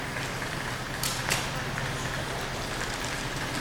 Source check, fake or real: real